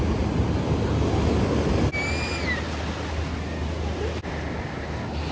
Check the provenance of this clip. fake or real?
real